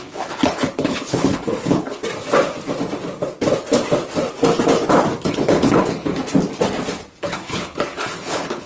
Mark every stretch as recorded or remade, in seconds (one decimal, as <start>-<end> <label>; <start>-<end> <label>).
0.0-2.0 remade; 2.0-5.3 recorded; 5.3-6.1 remade; 6.1-7.2 recorded; 7.2-8.7 remade

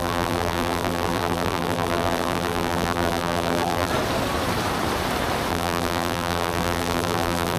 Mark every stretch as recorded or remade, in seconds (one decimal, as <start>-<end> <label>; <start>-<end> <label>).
0.0-3.9 remade; 3.9-5.5 recorded; 5.5-7.6 remade

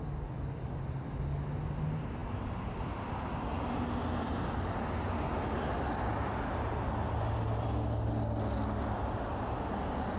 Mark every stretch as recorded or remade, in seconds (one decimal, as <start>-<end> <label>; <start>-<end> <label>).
0.0-10.2 recorded

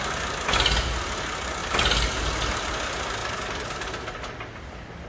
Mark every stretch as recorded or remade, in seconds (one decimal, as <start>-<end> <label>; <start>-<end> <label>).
0.0-1.6 recorded; 1.6-2.2 remade; 2.2-5.1 recorded

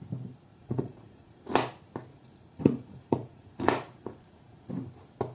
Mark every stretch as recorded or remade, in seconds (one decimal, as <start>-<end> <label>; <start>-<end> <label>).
0.0-0.5 recorded; 0.5-1.4 remade; 1.4-2.1 recorded; 2.1-4.7 remade; 4.7-5.3 recorded

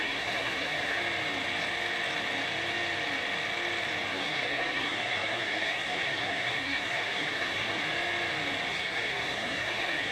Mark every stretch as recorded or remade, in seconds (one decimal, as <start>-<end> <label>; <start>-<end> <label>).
0.0-1.0 remade; 1.0-4.1 recorded; 4.1-7.8 remade; 7.8-8.7 recorded; 8.7-10.1 remade

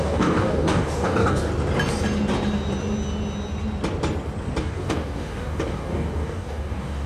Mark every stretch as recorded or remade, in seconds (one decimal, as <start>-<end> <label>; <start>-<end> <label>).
0.0-1.5 remade; 1.5-4.6 recorded; 4.6-7.1 remade

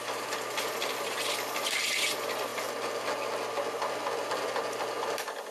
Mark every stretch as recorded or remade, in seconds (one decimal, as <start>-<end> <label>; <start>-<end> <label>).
0.0-2.5 remade; 2.5-4.9 recorded; 4.9-5.5 remade